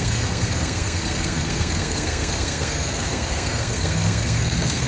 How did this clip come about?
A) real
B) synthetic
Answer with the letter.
B